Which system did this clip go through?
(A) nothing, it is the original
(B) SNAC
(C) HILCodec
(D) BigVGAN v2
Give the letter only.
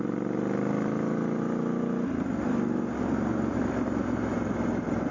A